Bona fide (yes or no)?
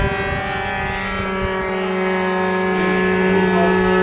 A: yes